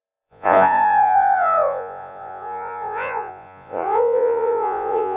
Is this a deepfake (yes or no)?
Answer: yes